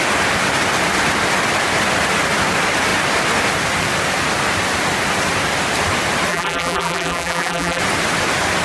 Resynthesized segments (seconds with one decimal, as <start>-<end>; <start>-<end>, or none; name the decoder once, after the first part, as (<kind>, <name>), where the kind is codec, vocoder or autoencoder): 6.3-7.8 (vocoder, BigVGAN v2)